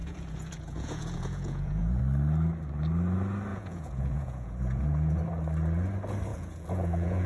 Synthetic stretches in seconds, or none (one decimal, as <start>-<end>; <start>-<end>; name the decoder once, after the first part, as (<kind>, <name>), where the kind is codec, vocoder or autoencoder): 0.0-2.0 (vocoder, Vocos); 3.5-5.2; 6.3-7.3